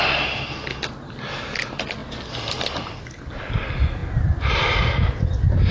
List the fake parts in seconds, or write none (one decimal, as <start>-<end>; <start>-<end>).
none